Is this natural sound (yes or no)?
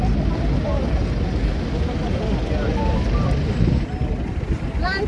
yes